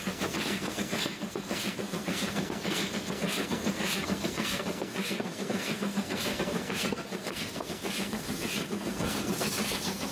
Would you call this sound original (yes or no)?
no